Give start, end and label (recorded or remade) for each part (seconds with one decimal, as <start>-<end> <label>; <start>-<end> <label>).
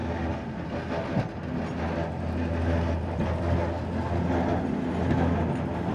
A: 0.0-5.9 recorded